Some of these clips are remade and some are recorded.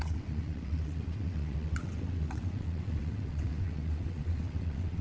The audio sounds remade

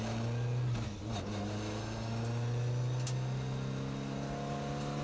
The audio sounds recorded